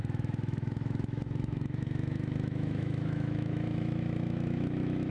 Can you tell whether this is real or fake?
fake